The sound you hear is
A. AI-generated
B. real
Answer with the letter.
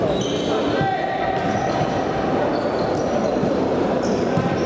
B